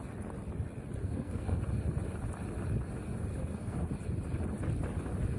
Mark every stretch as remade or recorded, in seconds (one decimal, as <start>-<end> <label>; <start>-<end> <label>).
0.0-1.0 recorded; 1.0-1.6 remade; 1.6-3.3 recorded; 3.3-3.9 remade; 3.9-5.4 recorded